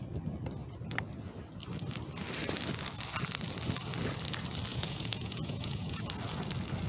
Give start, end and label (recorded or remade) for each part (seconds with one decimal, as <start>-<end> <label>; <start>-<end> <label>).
0.0-4.7 recorded; 4.7-6.0 remade; 6.0-6.9 recorded